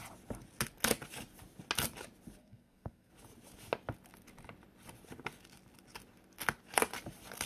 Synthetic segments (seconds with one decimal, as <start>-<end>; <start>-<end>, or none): 2.4-3.1